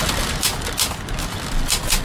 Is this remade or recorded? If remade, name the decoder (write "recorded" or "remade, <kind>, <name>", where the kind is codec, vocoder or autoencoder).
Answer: recorded